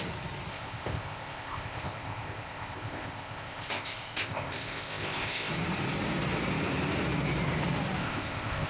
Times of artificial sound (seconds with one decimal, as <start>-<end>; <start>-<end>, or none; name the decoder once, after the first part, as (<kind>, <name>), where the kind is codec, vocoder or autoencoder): 0.5-5.5 (codec, ZipCodec); 8.0-8.7